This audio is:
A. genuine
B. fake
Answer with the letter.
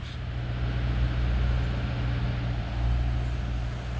A